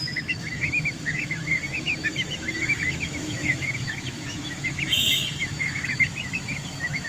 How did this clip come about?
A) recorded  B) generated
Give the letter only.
B